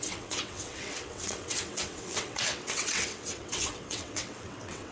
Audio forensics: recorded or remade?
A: remade